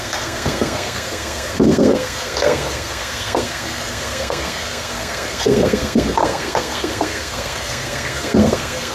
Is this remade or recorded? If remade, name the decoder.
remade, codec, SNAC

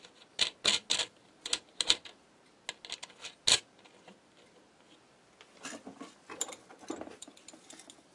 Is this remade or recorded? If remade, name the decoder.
recorded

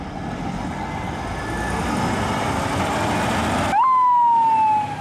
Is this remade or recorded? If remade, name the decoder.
recorded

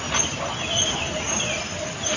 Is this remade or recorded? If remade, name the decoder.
recorded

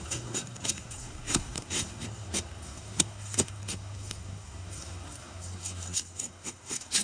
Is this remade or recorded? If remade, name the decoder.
remade, codec, SNAC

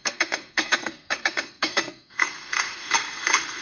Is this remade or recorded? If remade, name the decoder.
remade, codec, SNAC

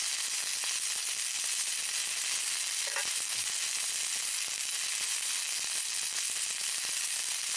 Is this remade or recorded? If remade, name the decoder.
recorded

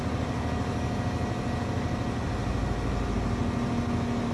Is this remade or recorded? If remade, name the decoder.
recorded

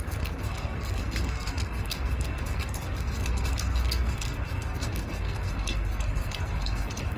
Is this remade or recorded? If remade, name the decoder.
remade, codec, SNAC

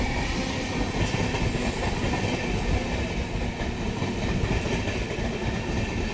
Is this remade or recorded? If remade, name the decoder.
recorded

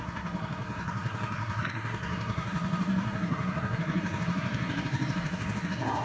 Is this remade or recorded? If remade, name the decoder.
remade, codec, SNAC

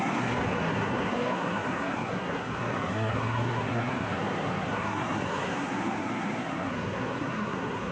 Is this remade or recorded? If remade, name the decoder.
remade, codec, SNAC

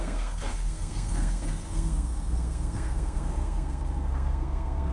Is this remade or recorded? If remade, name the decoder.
remade, codec, SNAC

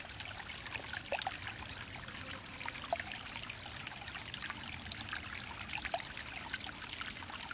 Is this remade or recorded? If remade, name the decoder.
recorded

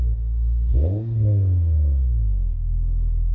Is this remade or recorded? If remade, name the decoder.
remade, codec, SNAC